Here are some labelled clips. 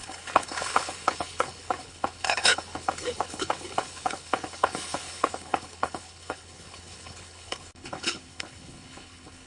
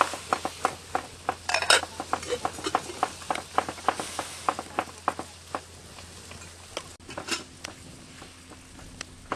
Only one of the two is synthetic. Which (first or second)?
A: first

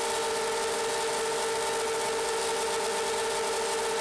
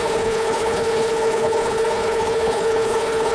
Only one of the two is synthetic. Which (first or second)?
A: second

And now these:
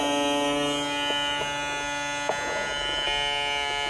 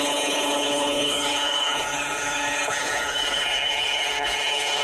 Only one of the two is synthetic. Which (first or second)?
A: second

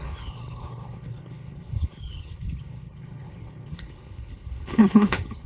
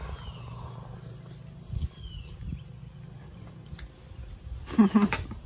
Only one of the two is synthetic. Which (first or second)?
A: first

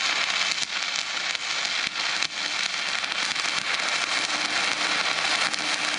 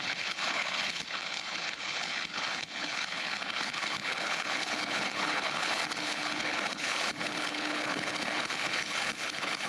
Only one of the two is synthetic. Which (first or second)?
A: second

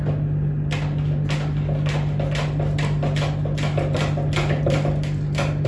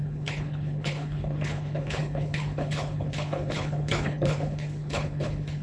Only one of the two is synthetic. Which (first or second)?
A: second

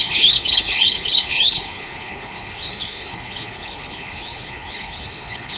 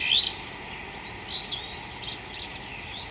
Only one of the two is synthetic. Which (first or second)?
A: first